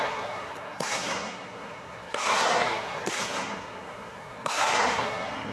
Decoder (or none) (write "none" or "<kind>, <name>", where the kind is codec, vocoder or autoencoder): codec, SNAC